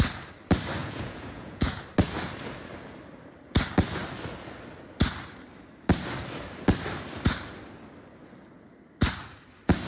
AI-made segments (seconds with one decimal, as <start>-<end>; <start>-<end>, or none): 0.8-1.8